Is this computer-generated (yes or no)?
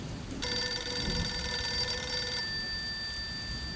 no